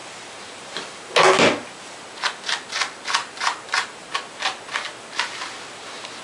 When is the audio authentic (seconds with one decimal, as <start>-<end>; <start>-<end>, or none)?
1.1-3.2; 4.3-6.2